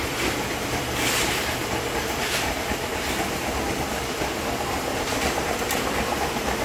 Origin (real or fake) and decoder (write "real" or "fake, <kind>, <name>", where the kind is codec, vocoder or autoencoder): fake, vocoder, BigVGAN v2